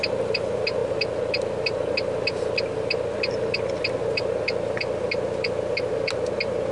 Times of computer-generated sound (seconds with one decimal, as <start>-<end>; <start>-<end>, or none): none